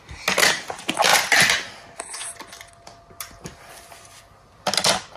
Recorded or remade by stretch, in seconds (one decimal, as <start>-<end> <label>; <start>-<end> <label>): 0.0-5.2 recorded